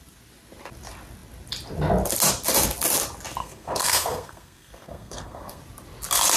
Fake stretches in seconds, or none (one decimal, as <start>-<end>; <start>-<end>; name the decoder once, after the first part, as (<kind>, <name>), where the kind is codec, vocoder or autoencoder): 3.4-5.6 (codec, SNAC)